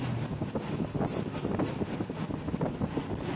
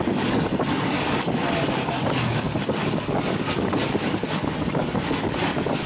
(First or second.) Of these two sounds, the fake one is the second